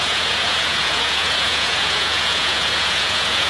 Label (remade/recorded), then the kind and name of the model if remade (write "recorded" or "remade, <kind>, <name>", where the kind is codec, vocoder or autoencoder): remade, vocoder, Vocos